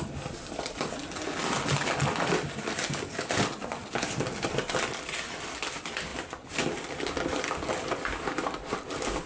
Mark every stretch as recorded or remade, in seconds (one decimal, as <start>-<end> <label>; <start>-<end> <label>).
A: 0.0-9.3 recorded